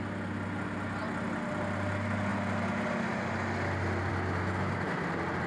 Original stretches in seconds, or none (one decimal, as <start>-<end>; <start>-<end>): 0.0-5.5